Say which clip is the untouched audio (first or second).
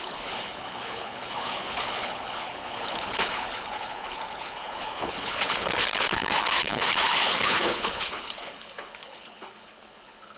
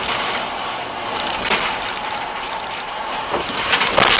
second